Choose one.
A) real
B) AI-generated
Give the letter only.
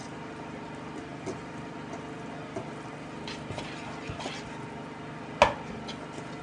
A